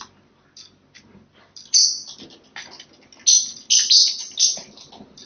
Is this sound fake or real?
real